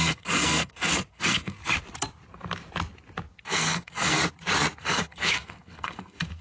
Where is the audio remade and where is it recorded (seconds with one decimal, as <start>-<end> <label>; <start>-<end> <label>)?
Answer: 0.0-1.6 remade; 1.6-3.4 recorded; 3.4-4.2 remade; 4.2-4.8 recorded; 4.8-6.4 remade